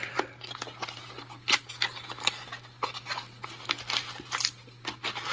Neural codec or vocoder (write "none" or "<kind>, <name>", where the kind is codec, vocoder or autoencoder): none